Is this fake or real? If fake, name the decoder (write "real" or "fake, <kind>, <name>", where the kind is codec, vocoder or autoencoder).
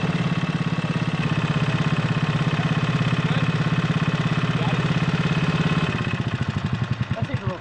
real